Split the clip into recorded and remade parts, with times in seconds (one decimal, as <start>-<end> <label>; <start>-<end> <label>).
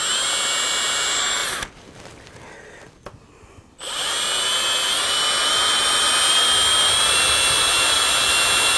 0.0-8.8 recorded